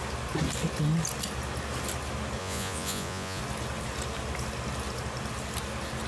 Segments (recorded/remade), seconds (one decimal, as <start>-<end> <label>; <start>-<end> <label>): 0.0-2.4 recorded; 2.4-3.4 remade; 3.4-6.1 recorded